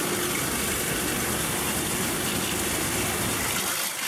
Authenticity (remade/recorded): recorded